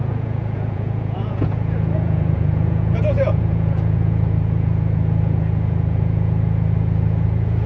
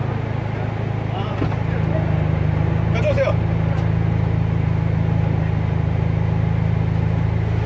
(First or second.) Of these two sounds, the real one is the second